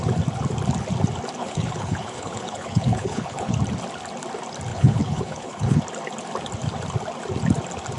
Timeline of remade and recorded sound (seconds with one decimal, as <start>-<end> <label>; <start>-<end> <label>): 0.0-1.4 recorded; 1.4-3.5 remade; 3.5-4.7 recorded; 4.7-5.8 remade; 5.8-8.0 recorded